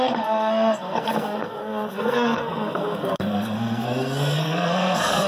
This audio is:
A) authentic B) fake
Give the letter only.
B